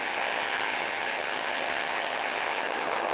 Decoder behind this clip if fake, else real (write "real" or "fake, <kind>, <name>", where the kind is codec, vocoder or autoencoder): fake, vocoder, HiFi-GAN